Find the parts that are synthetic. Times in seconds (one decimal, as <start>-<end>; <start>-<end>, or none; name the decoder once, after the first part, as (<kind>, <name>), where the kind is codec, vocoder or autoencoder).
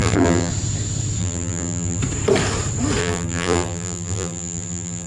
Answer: 0.0-0.5 (vocoder, BigVGAN v2); 1.2-2.0; 3.0-5.1